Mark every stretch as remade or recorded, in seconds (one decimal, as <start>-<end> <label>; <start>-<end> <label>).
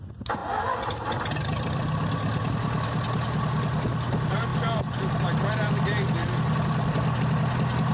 0.0-7.9 recorded